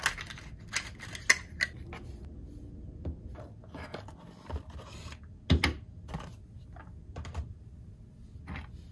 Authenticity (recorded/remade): recorded